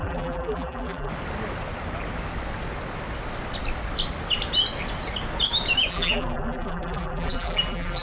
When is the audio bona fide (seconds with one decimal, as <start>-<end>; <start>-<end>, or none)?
1.1-5.9

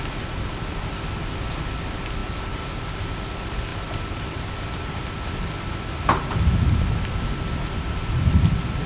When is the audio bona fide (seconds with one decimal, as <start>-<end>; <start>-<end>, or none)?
0.0-8.9